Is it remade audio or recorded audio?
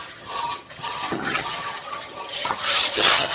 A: remade